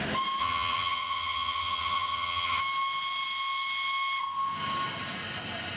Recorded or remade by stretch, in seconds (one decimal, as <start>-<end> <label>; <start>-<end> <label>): 0.0-0.4 recorded; 0.4-2.6 remade; 2.6-5.8 recorded